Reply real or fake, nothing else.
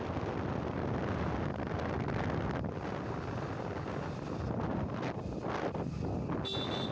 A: real